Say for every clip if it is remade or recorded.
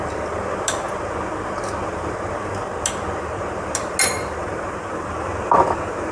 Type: recorded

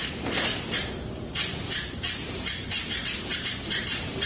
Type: recorded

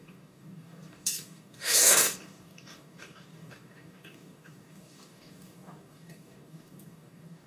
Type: remade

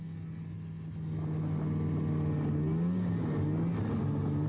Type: recorded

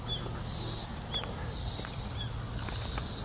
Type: recorded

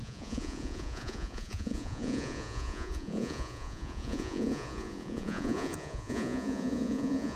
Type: remade